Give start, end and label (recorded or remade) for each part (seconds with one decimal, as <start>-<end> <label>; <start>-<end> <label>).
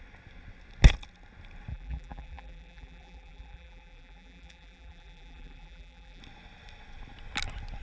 0.0-1.7 recorded; 1.7-6.2 remade; 6.2-7.8 recorded